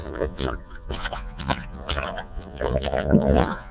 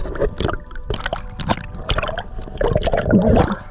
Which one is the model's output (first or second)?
first